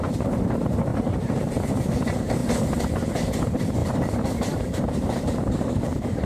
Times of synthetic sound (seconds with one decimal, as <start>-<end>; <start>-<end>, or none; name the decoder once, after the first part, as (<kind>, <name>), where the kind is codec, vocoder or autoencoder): 0.0-2.4 (vocoder, BigVGAN v2); 3.1-6.3